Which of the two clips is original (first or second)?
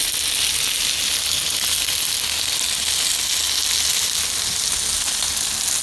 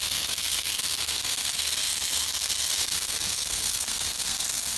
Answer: first